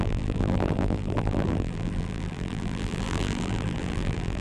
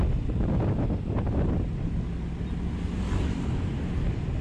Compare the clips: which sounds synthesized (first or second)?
first